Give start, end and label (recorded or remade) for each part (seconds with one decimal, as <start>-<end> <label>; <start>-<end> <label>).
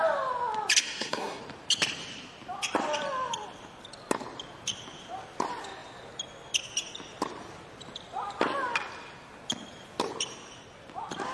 0.0-0.8 recorded; 0.8-1.4 remade; 1.4-11.3 recorded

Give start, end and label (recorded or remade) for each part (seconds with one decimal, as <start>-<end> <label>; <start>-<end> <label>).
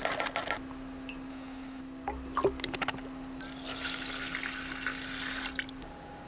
0.0-1.3 recorded; 1.3-1.8 remade; 1.8-6.3 recorded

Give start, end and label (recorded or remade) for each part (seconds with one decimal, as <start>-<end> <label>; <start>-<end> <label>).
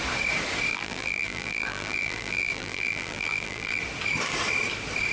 0.0-0.7 recorded; 0.7-3.8 remade; 3.8-5.1 recorded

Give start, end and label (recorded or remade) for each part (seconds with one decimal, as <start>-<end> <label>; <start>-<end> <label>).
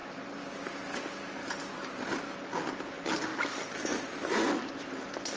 0.0-5.4 recorded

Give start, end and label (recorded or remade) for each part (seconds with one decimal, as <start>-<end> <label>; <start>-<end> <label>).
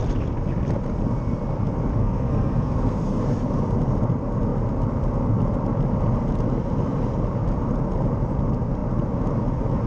0.0-2.0 recorded; 2.0-3.2 remade; 3.2-9.9 recorded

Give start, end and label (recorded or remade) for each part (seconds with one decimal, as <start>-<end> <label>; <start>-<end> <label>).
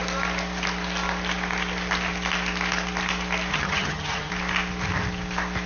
0.0-3.5 recorded; 3.5-4.3 remade; 4.3-5.7 recorded